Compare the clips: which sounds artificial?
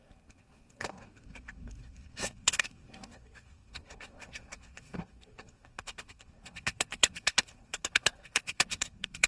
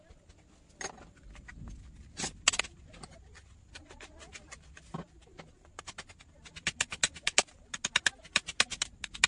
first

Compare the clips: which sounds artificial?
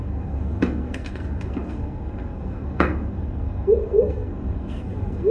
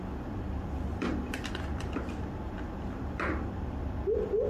first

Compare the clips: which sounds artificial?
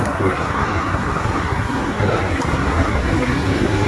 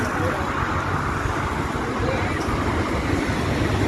first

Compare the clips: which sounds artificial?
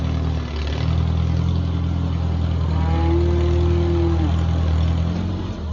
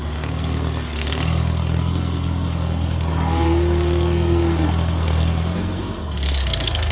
second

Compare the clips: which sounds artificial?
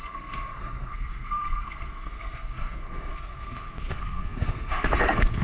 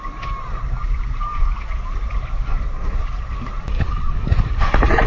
first